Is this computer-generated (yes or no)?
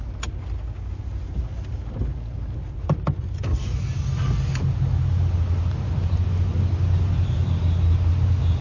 no